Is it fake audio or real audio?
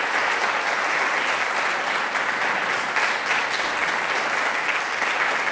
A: real